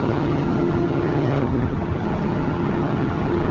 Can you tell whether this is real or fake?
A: fake